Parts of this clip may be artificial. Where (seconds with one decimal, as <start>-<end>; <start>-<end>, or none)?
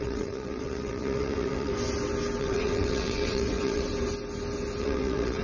0.0-1.7; 2.4-3.9; 4.8-5.4